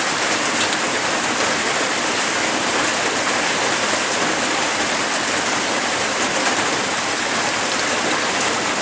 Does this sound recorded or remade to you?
remade